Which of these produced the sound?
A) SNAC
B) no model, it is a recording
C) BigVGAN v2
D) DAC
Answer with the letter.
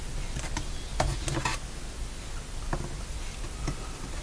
B